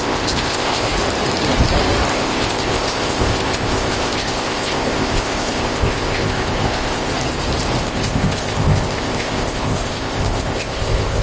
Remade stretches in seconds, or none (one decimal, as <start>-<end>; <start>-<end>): 0.0-0.9; 2.1-7.1; 7.8-11.2